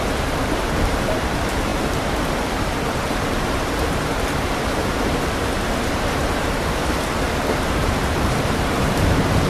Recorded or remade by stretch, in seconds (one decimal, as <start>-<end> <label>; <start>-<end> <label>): 0.0-9.5 remade